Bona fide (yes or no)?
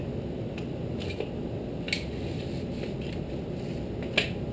yes